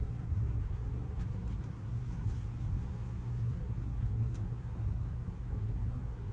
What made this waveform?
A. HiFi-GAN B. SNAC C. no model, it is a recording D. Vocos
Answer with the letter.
B